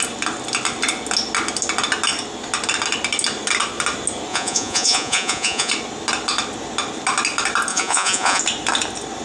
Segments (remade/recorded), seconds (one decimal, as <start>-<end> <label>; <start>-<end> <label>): 0.0-4.3 recorded; 4.3-5.7 remade; 5.7-7.7 recorded; 7.7-8.4 remade; 8.4-9.2 recorded